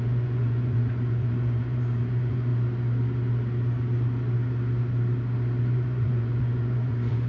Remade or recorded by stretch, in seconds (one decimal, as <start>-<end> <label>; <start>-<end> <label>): 0.0-2.5 remade; 2.5-5.6 recorded; 5.6-7.3 remade